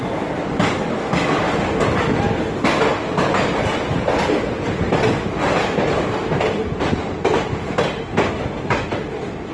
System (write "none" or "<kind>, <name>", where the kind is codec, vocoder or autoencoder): none